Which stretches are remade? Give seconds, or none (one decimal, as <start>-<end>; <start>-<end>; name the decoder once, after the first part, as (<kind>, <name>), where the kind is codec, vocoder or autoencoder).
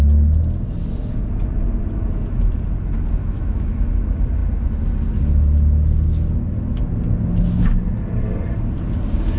3.2-3.9 (autoencoder, DAC-VAE)